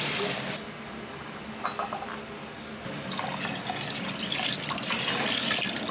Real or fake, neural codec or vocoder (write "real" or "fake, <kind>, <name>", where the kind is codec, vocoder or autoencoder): real